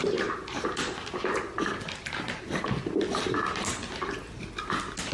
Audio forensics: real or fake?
real